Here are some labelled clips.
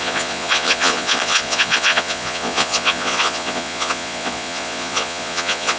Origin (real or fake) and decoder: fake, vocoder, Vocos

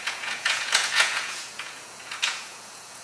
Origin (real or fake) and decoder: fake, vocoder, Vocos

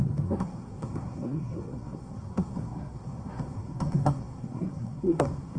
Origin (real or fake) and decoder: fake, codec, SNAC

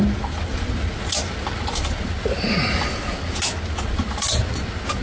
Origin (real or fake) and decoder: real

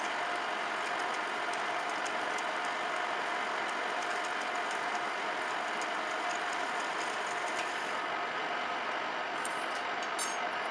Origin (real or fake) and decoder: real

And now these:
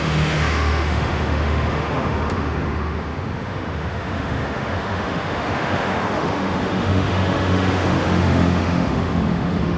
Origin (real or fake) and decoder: fake, autoencoder, DAC-VAE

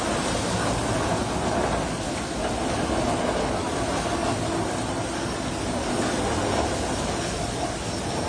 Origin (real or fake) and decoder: real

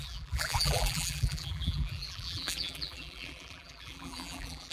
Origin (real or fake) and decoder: fake, vocoder, BigVGAN v2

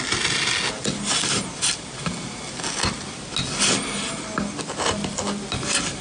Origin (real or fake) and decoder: real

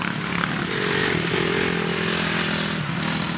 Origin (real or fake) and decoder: real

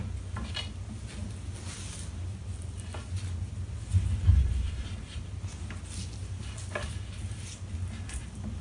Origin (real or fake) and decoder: real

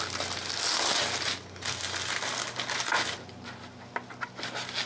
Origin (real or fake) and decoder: real